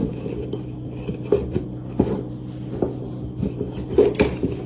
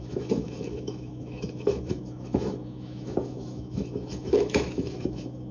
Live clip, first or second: first